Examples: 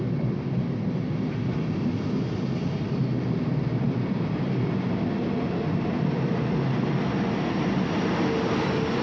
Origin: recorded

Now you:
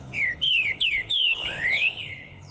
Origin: remade